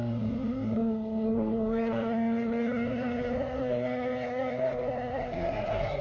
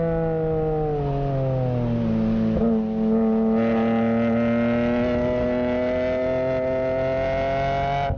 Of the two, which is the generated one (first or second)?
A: first